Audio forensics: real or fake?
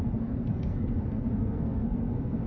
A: fake